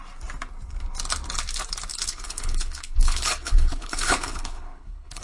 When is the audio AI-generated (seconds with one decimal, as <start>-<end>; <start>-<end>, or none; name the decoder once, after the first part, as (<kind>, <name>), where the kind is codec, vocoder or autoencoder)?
1.9-5.2 (codec, HILCodec)